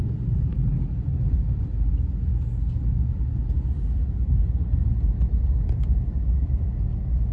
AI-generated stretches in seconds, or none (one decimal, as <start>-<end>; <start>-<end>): none